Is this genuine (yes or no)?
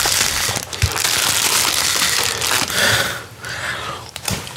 yes